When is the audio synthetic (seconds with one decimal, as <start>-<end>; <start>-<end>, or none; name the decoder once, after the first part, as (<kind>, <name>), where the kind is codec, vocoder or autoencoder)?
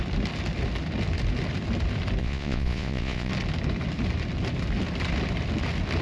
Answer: 2.2-3.3 (vocoder, Vocos)